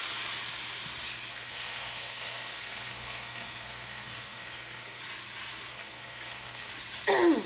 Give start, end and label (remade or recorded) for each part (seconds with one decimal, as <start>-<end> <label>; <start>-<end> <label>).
0.0-1.3 recorded; 1.3-5.0 remade; 5.0-5.7 recorded; 5.7-6.7 remade; 6.7-7.5 recorded